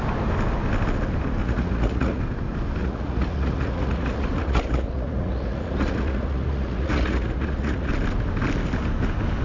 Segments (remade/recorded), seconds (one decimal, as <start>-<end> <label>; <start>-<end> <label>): 0.0-1.4 recorded; 1.4-2.2 remade; 2.2-2.8 recorded; 2.8-7.9 remade; 7.9-9.4 recorded